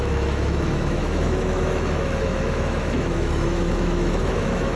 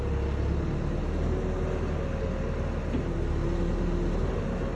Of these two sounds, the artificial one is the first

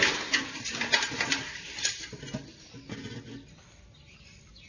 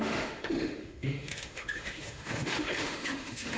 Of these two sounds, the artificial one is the second